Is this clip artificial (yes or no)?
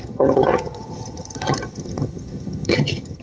yes